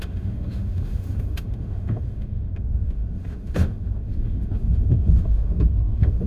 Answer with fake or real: fake